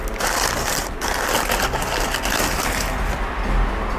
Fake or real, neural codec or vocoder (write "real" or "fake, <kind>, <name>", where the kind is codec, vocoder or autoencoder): real